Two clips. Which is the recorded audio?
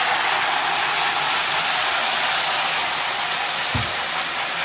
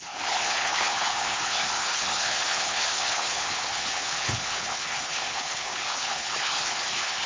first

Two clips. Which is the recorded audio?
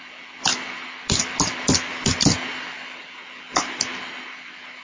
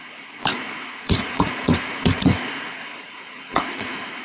first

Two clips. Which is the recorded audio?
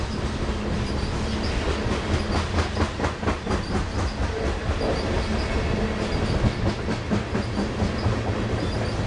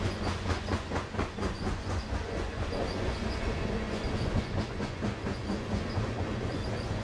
first